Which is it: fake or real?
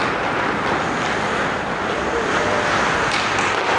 real